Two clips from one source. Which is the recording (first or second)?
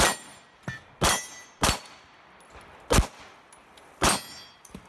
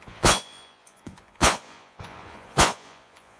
first